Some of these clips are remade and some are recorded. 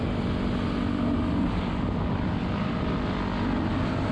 recorded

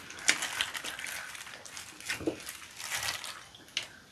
recorded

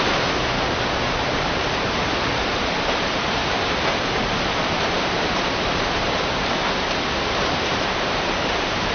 remade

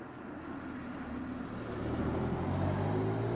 recorded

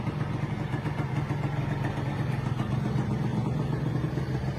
recorded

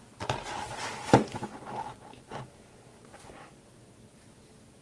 recorded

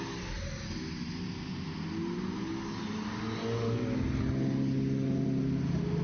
recorded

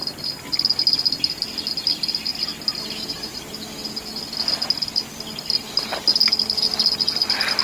recorded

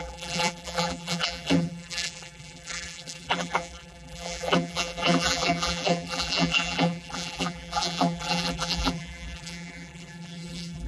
remade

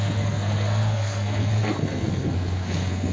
remade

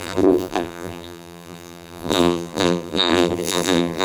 remade